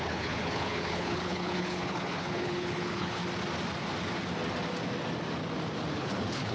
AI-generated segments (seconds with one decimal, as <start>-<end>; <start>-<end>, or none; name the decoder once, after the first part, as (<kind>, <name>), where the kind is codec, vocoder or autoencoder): 0.0-3.2 (codec, HILCodec); 6.0-6.5